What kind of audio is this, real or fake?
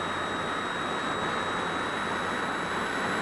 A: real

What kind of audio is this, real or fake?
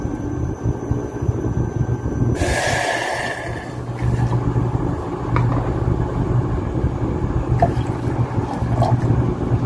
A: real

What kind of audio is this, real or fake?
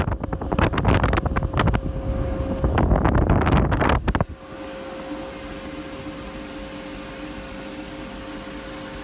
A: real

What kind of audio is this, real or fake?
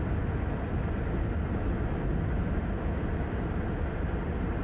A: real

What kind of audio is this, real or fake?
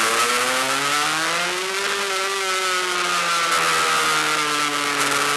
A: real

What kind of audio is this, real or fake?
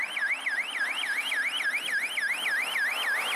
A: real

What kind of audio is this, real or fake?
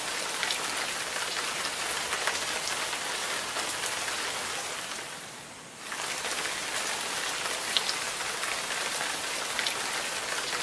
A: real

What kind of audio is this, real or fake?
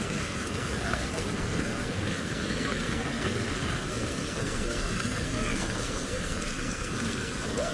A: fake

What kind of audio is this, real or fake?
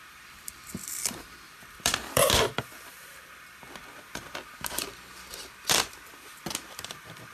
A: fake